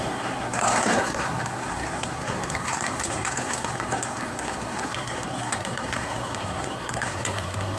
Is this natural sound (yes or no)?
no